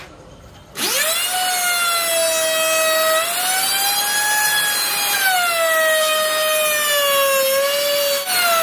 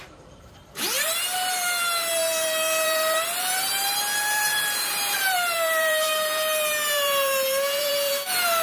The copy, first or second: second